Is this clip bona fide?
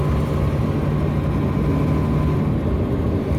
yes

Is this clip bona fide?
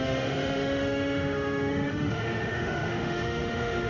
no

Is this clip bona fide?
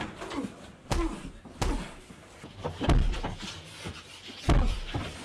yes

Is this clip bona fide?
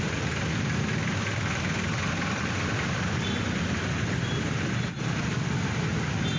yes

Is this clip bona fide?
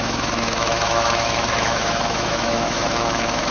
no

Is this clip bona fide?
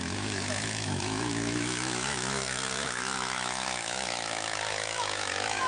no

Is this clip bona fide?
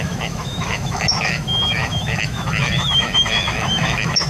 no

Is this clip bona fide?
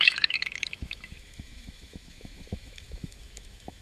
no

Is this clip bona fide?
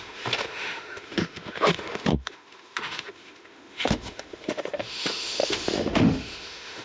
no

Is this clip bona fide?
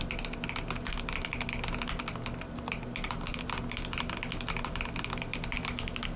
yes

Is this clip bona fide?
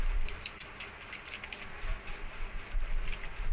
yes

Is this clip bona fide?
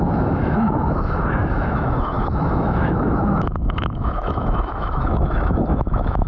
no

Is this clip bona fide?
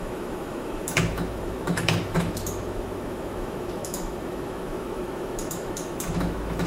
no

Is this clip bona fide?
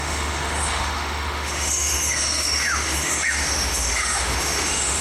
no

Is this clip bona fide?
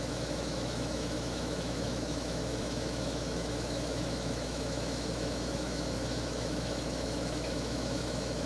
no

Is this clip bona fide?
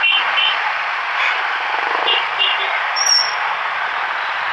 yes